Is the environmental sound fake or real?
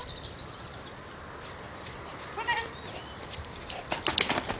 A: fake